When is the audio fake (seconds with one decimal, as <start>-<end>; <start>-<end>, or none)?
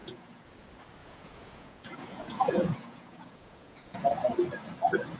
0.0-0.5; 1.0-4.1